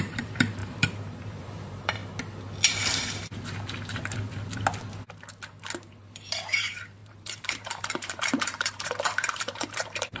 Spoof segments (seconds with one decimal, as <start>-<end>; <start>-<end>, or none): 0.0-2.0; 6.0-10.2